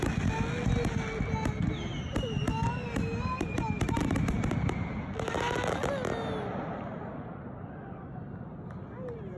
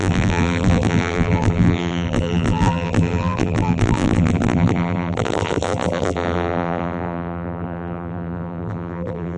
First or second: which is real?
first